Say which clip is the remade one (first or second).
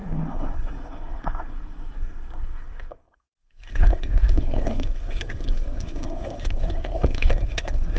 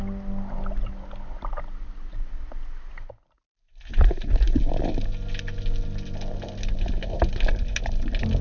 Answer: first